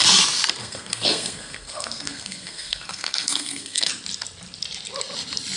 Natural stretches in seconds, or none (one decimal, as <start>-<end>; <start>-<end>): 0.0-0.6; 3.9-5.6